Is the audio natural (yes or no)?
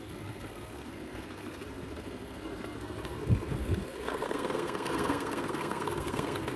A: no